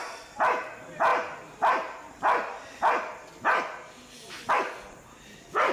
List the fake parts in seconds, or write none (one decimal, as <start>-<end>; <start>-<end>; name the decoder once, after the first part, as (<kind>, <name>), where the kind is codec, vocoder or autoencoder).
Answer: none

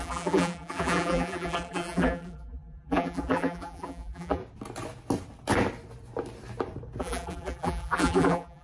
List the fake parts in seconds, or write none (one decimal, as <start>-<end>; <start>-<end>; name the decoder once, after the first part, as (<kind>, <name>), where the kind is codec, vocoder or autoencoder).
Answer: 0.0-4.4 (vocoder, BigVGAN v2); 7.0-8.6

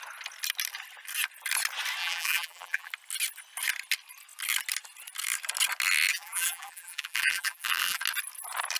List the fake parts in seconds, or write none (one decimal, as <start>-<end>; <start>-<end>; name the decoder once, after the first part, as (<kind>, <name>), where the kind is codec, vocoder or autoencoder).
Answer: 2.0-2.9 (vocoder, BigVGAN v2); 6.1-8.0

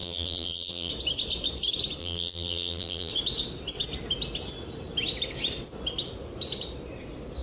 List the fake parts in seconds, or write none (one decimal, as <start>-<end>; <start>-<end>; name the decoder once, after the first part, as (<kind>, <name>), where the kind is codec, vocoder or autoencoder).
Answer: 0.0-0.9 (vocoder, BigVGAN v2); 2.0-3.1

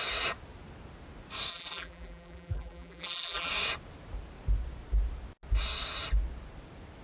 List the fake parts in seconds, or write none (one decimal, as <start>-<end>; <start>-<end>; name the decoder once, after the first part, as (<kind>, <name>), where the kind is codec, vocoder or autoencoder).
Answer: 1.5-3.5 (vocoder, BigVGAN v2)